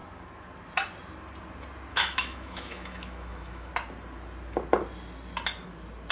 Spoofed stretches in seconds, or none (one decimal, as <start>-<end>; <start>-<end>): 1.9-3.7